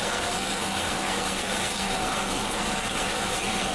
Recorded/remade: remade